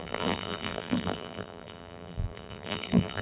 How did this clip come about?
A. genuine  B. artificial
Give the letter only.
B